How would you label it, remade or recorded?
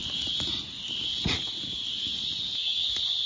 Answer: recorded